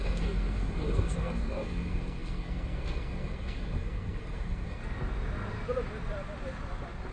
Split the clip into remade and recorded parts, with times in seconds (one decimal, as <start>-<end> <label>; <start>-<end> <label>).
0.0-4.8 remade; 4.8-7.1 recorded